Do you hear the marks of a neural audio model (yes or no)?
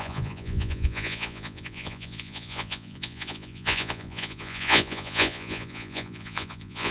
yes